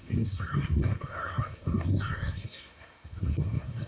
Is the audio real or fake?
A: fake